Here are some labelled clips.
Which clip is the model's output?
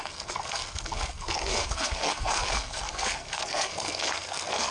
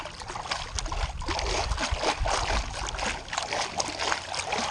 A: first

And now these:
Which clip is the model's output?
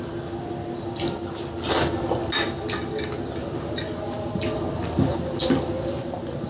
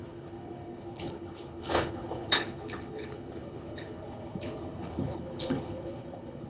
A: second